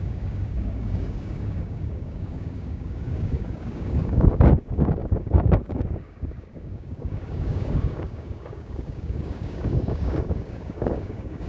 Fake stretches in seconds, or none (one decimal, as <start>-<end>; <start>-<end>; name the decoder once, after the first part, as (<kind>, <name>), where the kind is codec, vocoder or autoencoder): 0.0-11.5 (codec, DAC)